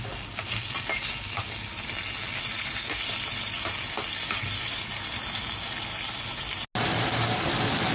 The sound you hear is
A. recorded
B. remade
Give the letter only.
A